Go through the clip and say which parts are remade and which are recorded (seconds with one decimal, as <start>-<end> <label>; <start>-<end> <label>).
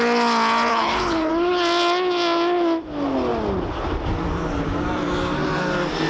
0.0-0.7 recorded; 0.7-1.3 remade; 1.3-6.1 recorded